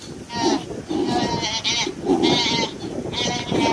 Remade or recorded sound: recorded